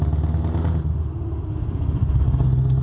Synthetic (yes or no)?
no